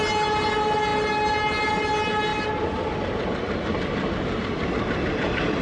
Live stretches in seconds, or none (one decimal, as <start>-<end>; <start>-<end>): 0.0-5.6